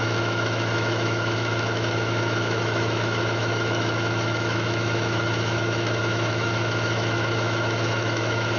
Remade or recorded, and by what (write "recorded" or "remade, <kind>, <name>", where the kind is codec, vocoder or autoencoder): remade, autoencoder, DAC-VAE